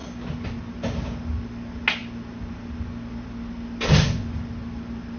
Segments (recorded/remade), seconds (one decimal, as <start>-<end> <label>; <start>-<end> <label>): 0.0-5.2 recorded